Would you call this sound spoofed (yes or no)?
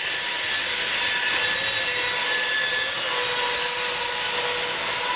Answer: no